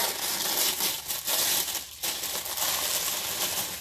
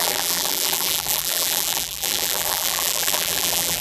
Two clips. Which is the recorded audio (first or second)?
first